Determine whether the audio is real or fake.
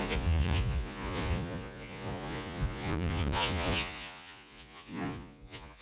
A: fake